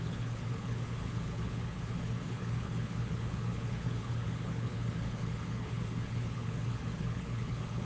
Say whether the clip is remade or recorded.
remade